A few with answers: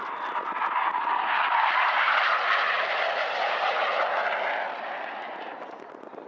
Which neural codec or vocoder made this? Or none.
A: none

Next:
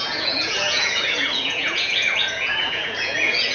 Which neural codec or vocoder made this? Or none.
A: vocoder, Vocos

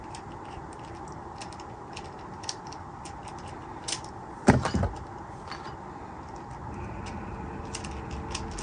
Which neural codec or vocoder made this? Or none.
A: none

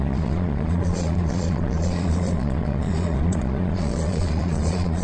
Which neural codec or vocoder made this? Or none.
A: vocoder, Vocos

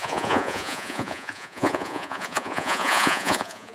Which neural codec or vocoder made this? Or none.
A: vocoder, Vocos